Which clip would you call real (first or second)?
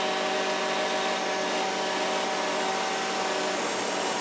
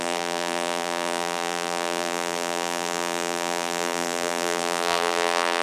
first